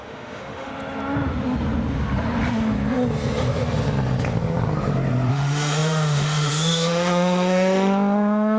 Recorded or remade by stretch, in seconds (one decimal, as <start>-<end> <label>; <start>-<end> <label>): 0.0-0.7 remade; 0.7-5.3 recorded; 5.3-8.6 remade